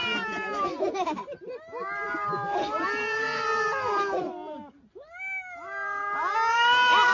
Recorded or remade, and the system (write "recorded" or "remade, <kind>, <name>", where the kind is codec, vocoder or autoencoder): recorded